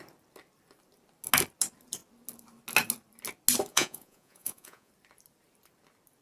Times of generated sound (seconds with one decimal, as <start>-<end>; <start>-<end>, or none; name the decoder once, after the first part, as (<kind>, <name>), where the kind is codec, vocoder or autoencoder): 3.7-4.9 (vocoder, Vocos)